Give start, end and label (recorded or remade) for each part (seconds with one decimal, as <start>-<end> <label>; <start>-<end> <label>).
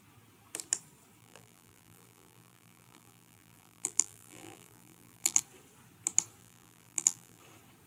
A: 0.0-1.2 recorded; 1.2-5.4 remade; 5.4-6.4 recorded; 6.4-7.4 remade; 7.4-7.9 recorded